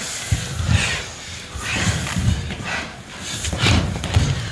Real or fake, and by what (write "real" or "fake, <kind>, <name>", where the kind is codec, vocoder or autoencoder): real